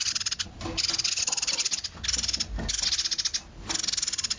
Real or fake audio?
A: real